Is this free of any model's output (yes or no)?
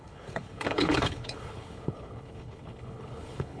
no